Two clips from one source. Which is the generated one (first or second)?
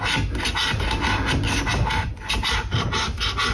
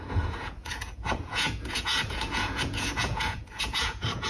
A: second